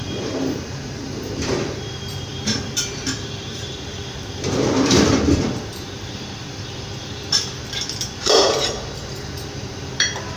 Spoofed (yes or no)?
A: yes